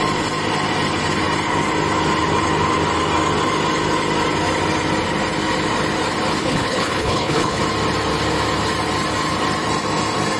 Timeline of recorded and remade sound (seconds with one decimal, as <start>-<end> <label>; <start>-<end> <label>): 0.0-6.4 recorded; 6.4-7.6 remade; 7.6-10.4 recorded